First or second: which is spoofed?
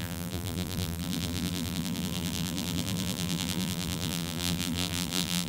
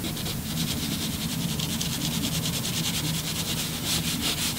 first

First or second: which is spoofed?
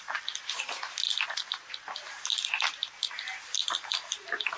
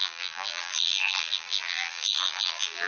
second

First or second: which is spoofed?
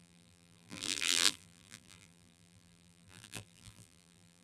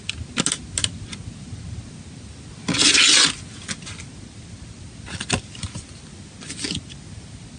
first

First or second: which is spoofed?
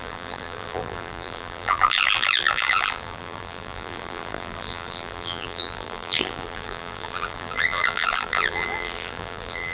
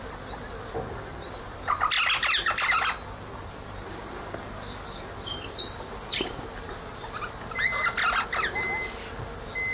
first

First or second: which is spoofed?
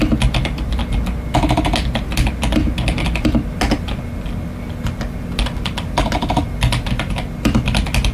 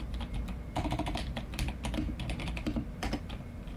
second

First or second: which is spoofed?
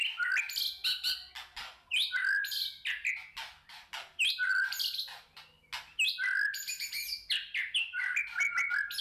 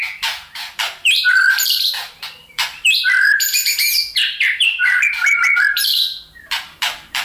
second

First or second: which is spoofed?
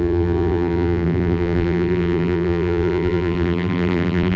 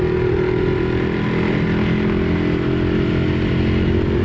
first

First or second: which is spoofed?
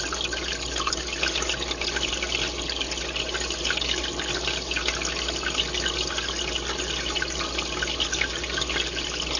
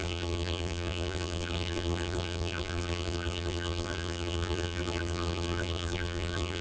second